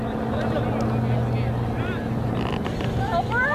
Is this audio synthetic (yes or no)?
no